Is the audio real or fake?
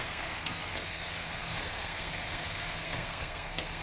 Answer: fake